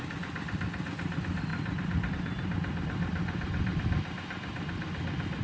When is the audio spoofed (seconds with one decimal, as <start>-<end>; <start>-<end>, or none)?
none

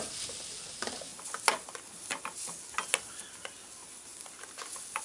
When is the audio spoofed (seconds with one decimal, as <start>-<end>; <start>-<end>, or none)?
none

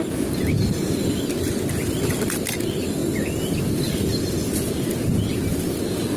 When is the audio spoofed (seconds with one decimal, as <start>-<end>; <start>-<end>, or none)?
none